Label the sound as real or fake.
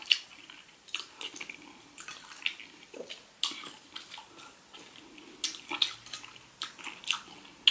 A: real